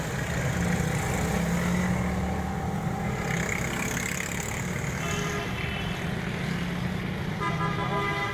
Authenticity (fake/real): real